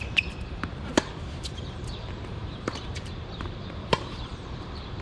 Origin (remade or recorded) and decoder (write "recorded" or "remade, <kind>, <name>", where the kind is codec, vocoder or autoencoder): remade, vocoder, BigVGAN v2